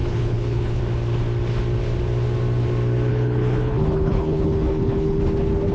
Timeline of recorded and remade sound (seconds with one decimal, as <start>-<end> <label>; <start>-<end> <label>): 0.0-0.8 remade; 0.8-3.1 recorded; 3.1-5.2 remade; 5.2-5.7 recorded